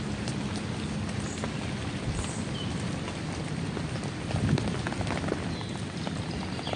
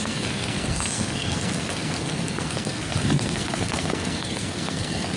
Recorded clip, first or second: first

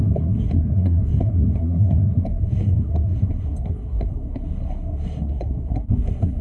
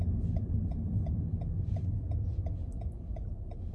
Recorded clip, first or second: second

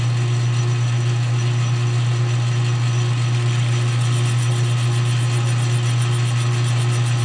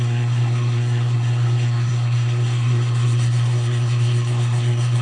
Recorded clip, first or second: first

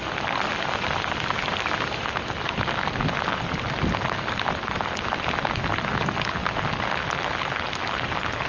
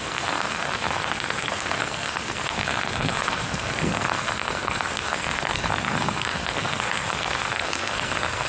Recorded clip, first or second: first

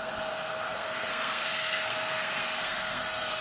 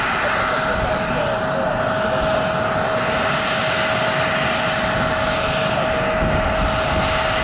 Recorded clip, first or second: second